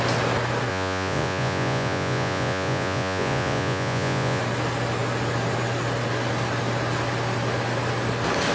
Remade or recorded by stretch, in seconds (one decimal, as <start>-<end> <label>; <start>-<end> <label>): 0.0-0.7 recorded; 0.7-4.4 remade; 4.4-8.5 recorded

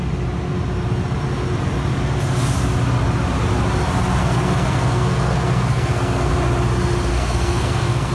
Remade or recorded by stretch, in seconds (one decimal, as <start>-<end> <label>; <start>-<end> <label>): 0.0-4.2 recorded; 4.2-6.3 remade; 6.3-7.1 recorded; 7.1-8.1 remade

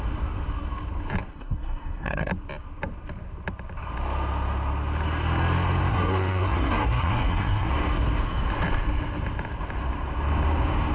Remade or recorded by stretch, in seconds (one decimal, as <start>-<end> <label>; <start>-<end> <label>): 0.0-1.3 recorded; 1.3-2.3 remade; 2.3-5.9 recorded; 5.9-7.7 remade; 7.7-10.9 recorded

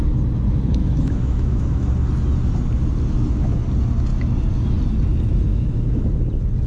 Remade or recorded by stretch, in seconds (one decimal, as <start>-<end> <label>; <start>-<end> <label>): 0.0-0.8 recorded; 0.8-1.9 remade; 1.9-5.5 recorded; 5.5-6.1 remade; 6.1-6.7 recorded

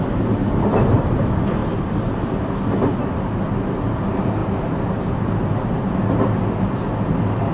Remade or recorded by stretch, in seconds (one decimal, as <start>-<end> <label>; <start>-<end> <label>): 0.0-0.4 recorded; 0.4-1.2 remade; 1.2-1.6 recorded; 1.6-2.3 remade; 2.3-4.4 recorded; 4.4-5.9 remade; 5.9-7.5 recorded

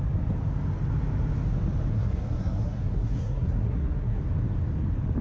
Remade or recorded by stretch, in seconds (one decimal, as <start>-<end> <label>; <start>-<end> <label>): 0.0-1.9 recorded; 1.9-4.2 remade; 4.2-5.2 recorded

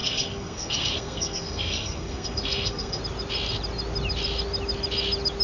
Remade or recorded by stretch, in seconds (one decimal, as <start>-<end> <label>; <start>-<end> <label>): 0.0-3.0 remade; 3.0-5.4 recorded

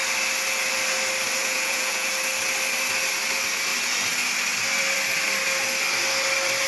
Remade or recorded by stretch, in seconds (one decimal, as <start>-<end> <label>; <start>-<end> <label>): 0.0-1.4 recorded; 1.4-2.1 remade; 2.1-6.7 recorded